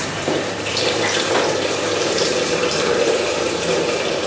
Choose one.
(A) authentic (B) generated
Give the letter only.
B